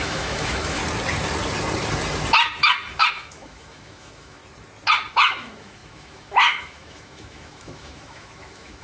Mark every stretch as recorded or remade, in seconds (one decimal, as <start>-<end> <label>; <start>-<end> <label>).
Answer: 0.0-0.8 remade; 0.8-3.1 recorded; 3.1-4.4 remade; 4.4-5.1 recorded; 5.1-8.8 remade